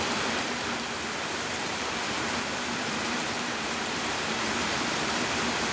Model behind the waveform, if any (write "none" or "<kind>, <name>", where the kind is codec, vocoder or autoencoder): vocoder, BigVGAN v2